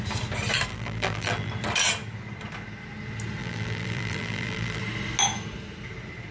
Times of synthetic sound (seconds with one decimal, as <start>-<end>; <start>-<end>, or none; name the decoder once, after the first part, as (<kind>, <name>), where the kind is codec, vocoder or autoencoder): 0.7-1.5 (vocoder, BigVGAN v2); 3.4-4.8